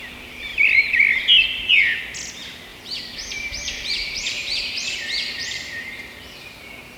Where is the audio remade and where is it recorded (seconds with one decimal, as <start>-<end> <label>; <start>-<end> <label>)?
0.0-2.7 recorded; 2.7-6.2 remade; 6.2-7.0 recorded

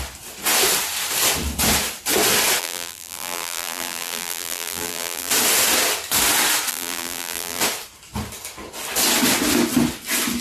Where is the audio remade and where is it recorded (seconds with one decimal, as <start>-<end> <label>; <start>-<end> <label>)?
0.0-2.6 recorded; 2.6-5.3 remade; 5.3-6.7 recorded; 6.7-7.6 remade; 7.6-10.4 recorded